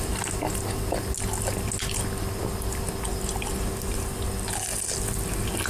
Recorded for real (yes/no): yes